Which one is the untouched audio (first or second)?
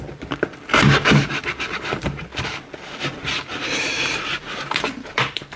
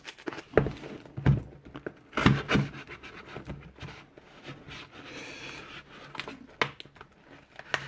second